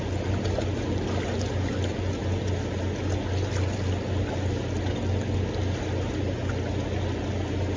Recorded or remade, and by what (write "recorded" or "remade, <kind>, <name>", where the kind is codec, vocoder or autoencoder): recorded